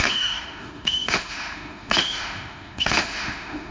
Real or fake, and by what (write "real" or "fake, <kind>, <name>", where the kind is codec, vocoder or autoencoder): fake, autoencoder, DAC-VAE